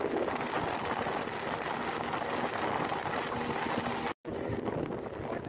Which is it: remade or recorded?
recorded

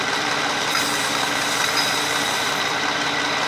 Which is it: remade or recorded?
recorded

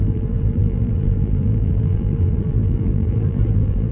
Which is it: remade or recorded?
remade